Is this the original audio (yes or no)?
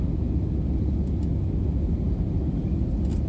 yes